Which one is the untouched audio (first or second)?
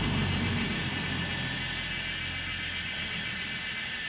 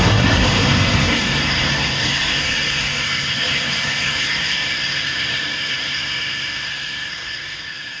first